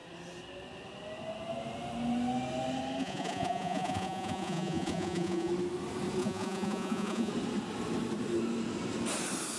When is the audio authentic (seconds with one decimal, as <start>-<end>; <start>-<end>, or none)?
0.0-3.0; 5.5-6.2; 7.3-9.6